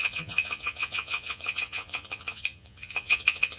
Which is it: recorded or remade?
remade